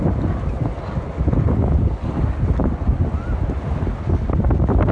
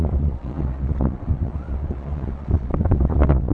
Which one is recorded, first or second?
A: first